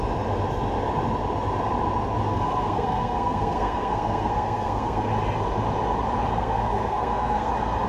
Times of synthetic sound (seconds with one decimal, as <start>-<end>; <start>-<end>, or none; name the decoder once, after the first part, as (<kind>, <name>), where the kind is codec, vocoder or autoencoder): 2.3-5.1 (codec, SNAC); 6.3-7.5

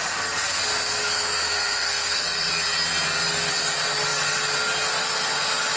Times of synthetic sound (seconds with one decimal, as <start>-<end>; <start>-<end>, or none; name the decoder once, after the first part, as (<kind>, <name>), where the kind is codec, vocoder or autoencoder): 1.0-2.5 (codec, SNAC)

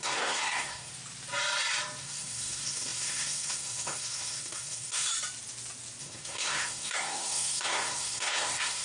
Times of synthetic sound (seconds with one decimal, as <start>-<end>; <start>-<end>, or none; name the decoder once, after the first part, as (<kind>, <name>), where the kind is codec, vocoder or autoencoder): 0.0-0.9 (codec, SNAC); 2.0-5.1; 6.0-8.8

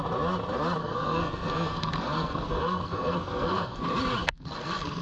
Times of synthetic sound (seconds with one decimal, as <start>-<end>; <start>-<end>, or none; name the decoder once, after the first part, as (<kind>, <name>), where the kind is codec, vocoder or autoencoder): 0.8-3.8 (codec, SNAC); 4.2-5.0

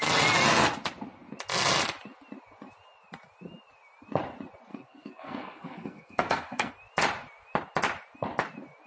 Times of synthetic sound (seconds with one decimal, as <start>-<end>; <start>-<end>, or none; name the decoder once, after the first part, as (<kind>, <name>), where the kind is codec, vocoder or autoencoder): 4.7-6.7 (codec, SNAC)

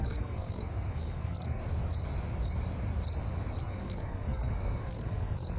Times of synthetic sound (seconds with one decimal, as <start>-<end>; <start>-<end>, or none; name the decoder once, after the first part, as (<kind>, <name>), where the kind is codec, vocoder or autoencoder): 0.0-1.6 (codec, SNAC); 3.6-5.6

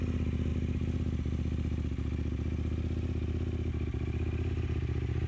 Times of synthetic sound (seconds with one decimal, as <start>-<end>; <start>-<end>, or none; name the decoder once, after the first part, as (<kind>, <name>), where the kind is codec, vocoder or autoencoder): none

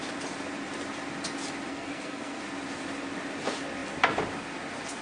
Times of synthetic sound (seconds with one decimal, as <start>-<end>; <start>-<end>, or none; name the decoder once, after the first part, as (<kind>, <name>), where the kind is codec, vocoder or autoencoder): 1.7-2.4 (codec, SNAC)